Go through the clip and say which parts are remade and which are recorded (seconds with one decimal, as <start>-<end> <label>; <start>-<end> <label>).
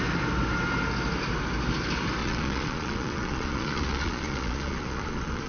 0.0-2.2 recorded; 2.2-5.5 remade